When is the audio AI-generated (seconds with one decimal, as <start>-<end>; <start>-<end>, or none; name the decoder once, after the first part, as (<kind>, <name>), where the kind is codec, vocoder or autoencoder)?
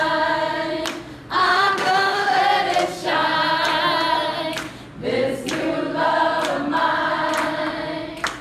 1.4-2.4 (autoencoder, DAC-VAE)